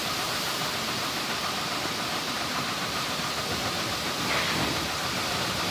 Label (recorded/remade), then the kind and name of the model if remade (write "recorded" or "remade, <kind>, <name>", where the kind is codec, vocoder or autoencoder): remade, vocoder, BigVGAN v2